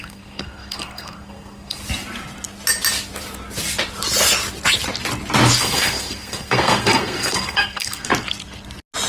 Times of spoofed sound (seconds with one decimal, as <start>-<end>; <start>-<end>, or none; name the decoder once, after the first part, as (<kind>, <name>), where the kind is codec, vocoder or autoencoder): 0.0-1.8 (codec, SNAC); 5.6-8.1